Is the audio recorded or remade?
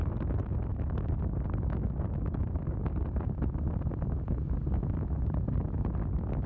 recorded